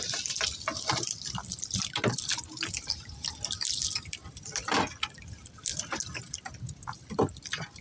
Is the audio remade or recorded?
recorded